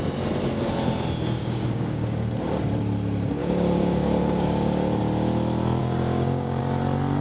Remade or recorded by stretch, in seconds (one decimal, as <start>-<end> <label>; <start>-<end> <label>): 0.0-1.4 recorded; 1.4-2.3 remade; 2.3-3.4 recorded; 3.4-5.0 remade; 5.0-5.8 recorded; 5.8-6.6 remade; 6.6-7.2 recorded